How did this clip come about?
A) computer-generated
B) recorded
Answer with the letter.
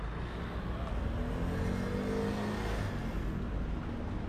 B